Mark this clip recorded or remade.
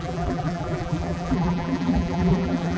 remade